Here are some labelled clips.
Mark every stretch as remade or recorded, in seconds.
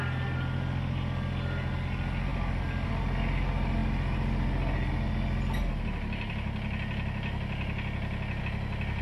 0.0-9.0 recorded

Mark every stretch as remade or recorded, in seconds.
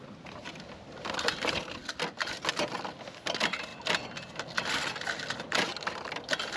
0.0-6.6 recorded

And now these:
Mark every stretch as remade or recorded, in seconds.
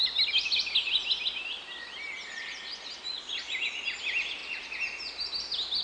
0.0-5.8 recorded